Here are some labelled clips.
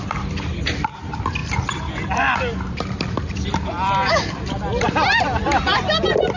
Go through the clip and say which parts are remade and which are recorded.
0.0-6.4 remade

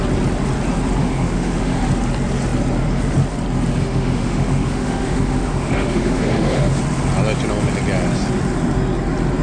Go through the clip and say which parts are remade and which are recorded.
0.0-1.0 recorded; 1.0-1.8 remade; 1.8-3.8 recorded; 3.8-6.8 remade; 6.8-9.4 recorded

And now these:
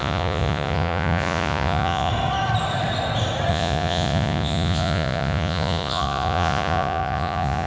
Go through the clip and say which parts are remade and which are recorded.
0.0-2.1 remade; 2.1-3.5 recorded; 3.5-7.7 remade

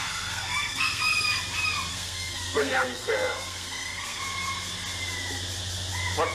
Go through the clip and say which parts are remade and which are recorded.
0.0-1.0 remade; 1.0-1.9 recorded; 1.9-4.2 remade; 4.2-6.3 recorded

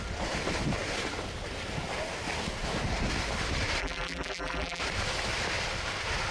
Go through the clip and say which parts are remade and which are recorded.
0.0-3.8 recorded; 3.8-4.8 remade; 4.8-6.3 recorded

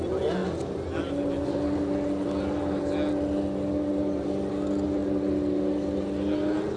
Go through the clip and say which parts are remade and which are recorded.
0.0-6.8 recorded